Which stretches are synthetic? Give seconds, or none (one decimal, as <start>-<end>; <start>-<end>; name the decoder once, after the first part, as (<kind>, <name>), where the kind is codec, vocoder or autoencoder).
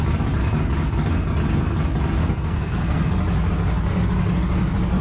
2.2-3.1 (codec, SNAC)